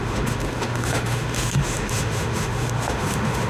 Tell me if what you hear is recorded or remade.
remade